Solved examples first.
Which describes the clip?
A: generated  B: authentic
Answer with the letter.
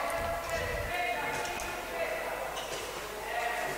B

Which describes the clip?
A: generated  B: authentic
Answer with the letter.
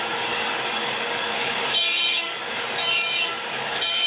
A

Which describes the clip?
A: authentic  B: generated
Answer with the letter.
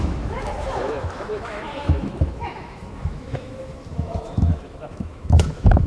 B